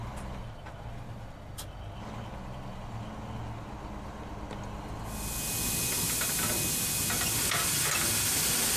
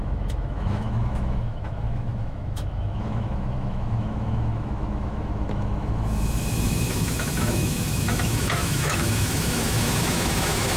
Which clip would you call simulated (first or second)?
second